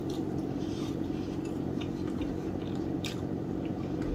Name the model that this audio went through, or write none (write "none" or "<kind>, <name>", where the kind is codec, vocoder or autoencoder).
vocoder, BigVGAN v2